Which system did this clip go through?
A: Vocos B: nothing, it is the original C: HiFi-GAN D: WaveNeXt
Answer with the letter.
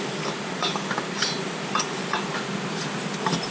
B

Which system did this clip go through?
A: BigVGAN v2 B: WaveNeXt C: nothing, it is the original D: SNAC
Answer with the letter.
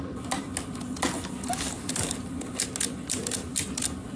C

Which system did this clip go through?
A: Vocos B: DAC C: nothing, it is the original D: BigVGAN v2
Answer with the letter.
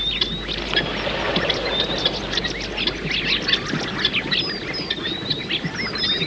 C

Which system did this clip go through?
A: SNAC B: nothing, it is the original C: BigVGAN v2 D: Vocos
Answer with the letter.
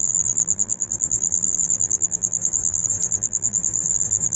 C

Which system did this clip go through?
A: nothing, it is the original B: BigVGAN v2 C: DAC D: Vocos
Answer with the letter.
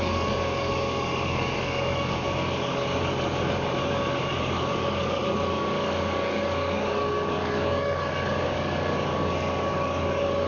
C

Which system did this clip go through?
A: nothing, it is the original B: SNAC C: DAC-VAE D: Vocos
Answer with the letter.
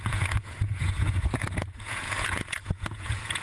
D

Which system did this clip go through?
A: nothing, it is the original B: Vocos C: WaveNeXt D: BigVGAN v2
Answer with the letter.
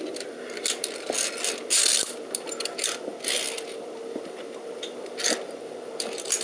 A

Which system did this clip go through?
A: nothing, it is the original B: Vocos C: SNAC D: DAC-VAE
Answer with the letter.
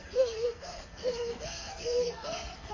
C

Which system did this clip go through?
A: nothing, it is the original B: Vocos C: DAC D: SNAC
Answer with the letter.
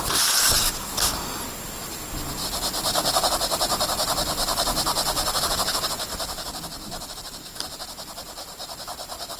A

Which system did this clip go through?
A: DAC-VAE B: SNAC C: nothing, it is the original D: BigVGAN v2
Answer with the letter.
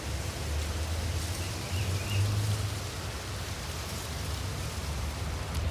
D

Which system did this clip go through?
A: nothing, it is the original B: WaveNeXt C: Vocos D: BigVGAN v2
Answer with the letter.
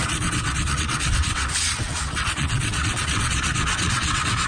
B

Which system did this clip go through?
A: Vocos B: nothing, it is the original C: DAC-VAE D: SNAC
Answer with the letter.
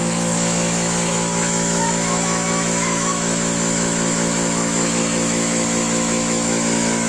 C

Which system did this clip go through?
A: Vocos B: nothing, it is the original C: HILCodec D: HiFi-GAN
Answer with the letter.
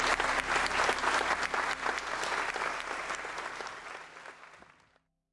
B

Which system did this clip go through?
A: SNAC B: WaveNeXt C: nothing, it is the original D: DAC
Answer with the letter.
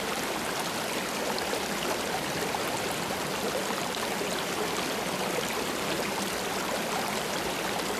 C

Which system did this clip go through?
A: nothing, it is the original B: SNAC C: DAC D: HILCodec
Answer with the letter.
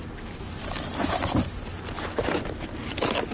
A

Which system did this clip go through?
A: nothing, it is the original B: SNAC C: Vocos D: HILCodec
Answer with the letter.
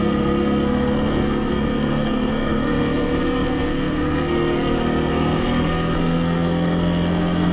B